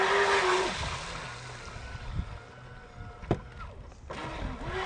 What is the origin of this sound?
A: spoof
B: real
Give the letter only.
B